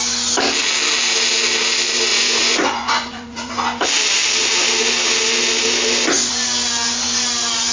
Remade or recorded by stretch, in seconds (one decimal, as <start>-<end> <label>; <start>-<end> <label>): 0.0-2.1 recorded; 2.1-3.5 remade; 3.5-7.7 recorded

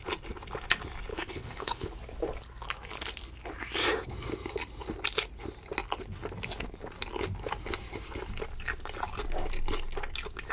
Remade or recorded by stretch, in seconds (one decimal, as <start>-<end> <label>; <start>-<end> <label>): 0.0-1.1 recorded; 1.1-1.9 remade; 1.9-10.5 recorded

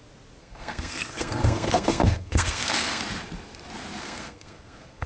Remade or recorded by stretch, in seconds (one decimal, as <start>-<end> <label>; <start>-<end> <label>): 0.0-0.4 recorded; 0.4-3.0 remade; 3.0-4.0 recorded; 4.0-5.1 remade